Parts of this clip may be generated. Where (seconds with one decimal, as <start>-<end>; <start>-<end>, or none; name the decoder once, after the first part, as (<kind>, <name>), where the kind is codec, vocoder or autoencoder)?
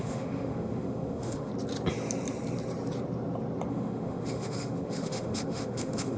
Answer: 0.0-1.5 (autoencoder, DAC-VAE); 3.7-6.2